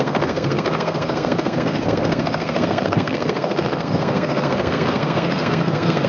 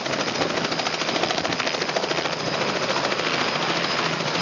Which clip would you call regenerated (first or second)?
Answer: first